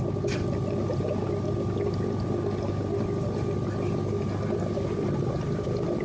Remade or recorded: recorded